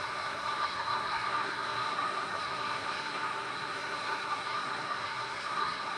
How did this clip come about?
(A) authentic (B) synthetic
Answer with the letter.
B